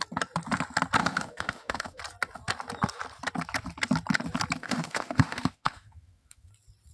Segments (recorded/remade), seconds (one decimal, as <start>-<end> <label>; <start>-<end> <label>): 0.0-1.0 recorded; 1.0-2.0 remade; 2.0-4.6 recorded; 4.6-6.5 remade; 6.5-6.9 recorded